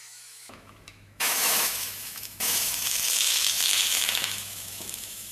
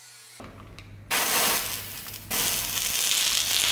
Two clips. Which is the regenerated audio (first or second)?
first